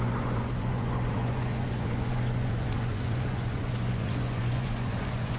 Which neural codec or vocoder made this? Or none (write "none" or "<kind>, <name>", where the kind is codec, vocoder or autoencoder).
vocoder, Vocos